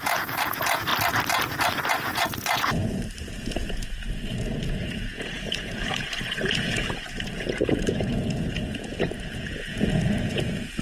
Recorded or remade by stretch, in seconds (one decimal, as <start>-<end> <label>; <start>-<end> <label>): 0.0-0.9 remade; 0.9-1.9 recorded; 1.9-2.8 remade; 2.8-3.4 recorded; 3.4-10.8 remade